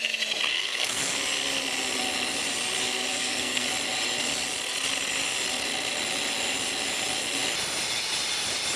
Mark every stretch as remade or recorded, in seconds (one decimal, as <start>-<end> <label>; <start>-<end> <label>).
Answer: 0.0-0.5 recorded; 0.5-1.2 remade; 1.2-3.1 recorded; 3.1-3.7 remade; 3.7-8.8 recorded